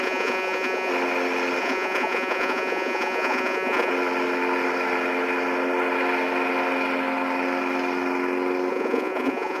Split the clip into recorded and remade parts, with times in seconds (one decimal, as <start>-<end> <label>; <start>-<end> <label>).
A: 0.0-0.9 remade; 0.9-1.6 recorded; 1.6-3.9 remade; 3.9-8.7 recorded; 8.7-9.6 remade